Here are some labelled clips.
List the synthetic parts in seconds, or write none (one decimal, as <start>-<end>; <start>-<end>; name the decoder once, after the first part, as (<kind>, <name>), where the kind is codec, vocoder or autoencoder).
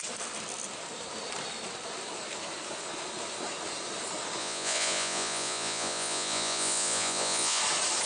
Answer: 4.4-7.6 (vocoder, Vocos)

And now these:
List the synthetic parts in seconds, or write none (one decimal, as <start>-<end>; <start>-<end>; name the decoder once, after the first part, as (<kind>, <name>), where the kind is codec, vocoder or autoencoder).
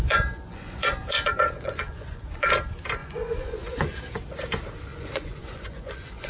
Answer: 0.0-2.5 (vocoder, Vocos); 3.0-4.0; 4.9-6.3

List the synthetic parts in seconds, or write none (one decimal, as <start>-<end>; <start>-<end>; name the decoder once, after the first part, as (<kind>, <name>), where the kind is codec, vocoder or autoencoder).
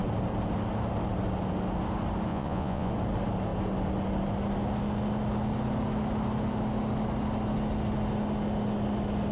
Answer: 2.3-2.9 (vocoder, Vocos)